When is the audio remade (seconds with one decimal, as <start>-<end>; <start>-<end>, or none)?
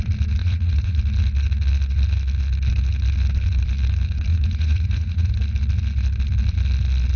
0.4-1.0; 4.3-5.3